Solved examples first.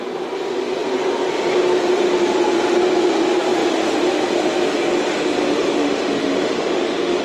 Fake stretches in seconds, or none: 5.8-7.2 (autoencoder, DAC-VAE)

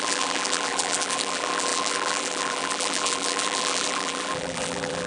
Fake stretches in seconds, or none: 0.0-5.1 (vocoder, BigVGAN v2)

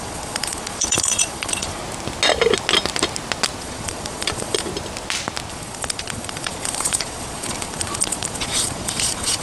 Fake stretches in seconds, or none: 0.0-1.8 (vocoder, Vocos); 3.6-4.7; 5.5-9.4

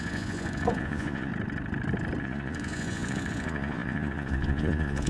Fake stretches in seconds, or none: 0.0-1.3 (vocoder, Vocos); 2.2-5.1

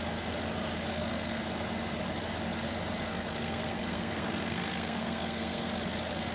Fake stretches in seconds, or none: 0.9-1.4 (codec, SNAC); 3.1-5.7

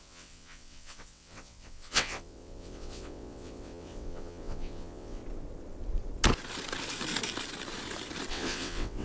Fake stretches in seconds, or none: 0.0-5.2 (vocoder, WaveNeXt); 8.3-9.0